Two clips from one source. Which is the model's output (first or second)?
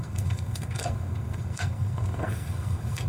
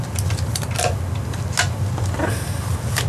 first